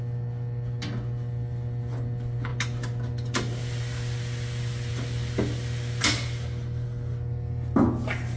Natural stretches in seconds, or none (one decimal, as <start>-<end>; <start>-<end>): 0.0-8.4